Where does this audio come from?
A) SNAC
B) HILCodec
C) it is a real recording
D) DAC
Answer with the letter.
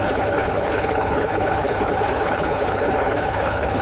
B